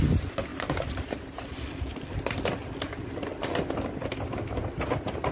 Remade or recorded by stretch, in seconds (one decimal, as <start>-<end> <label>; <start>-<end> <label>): 0.0-0.5 recorded; 0.5-1.7 remade; 1.7-5.3 recorded